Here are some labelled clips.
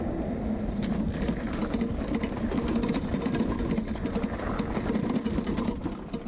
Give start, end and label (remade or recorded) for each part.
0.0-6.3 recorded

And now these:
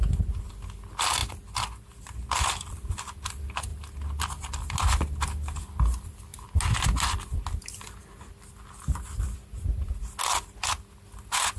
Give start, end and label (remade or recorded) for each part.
0.0-11.6 recorded

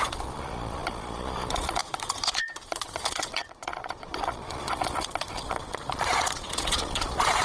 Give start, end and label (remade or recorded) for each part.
0.0-7.4 remade

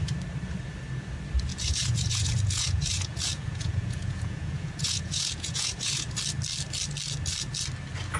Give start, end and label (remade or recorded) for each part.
0.0-1.5 recorded; 1.5-6.2 remade; 6.2-8.2 recorded

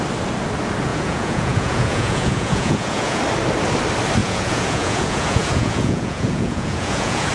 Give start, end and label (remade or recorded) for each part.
0.0-0.9 recorded; 0.9-3.2 remade; 3.2-4.2 recorded; 4.2-7.3 remade

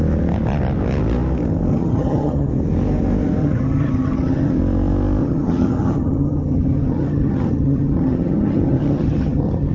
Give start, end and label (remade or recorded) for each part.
0.0-1.7 recorded; 1.7-2.5 remade; 2.5-3.4 recorded; 3.4-4.6 remade; 4.6-5.2 recorded; 5.2-9.7 remade

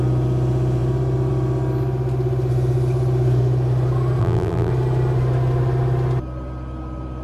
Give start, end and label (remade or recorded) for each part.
0.0-4.2 recorded; 4.2-4.7 remade; 4.7-7.2 recorded